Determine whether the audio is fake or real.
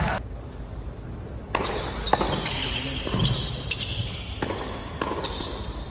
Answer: real